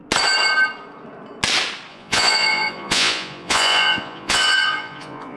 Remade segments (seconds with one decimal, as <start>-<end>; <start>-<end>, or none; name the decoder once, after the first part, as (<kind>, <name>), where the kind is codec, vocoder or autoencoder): 1.9-5.4 (vocoder, Vocos)